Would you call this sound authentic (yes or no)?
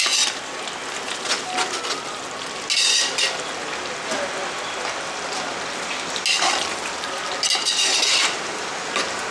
yes